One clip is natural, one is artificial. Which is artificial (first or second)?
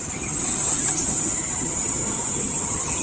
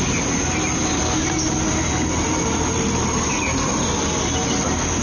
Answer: first